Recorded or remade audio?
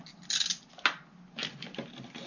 recorded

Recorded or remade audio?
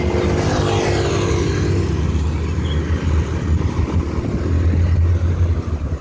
recorded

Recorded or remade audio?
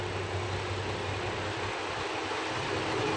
recorded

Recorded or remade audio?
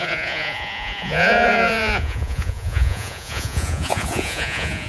remade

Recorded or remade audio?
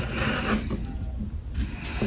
recorded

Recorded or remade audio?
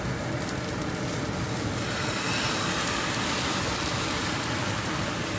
remade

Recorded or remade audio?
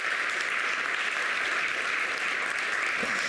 recorded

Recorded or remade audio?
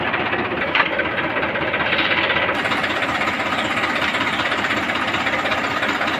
remade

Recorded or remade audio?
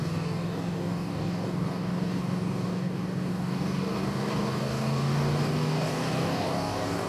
remade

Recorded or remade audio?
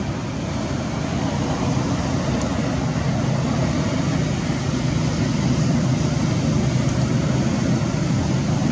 recorded